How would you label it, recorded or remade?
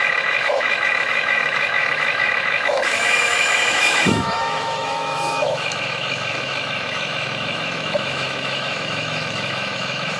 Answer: remade